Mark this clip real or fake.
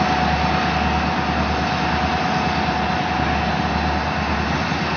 real